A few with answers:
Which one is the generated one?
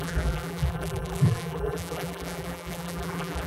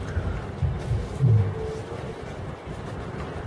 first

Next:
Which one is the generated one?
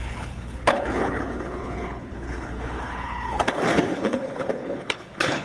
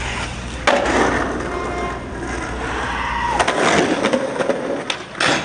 first